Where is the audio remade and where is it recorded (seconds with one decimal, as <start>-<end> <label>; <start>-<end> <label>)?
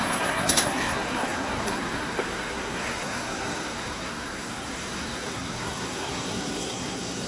0.0-7.3 remade